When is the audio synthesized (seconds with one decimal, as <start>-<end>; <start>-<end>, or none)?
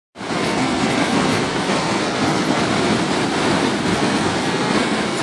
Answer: 0.4-2.6; 3.9-5.2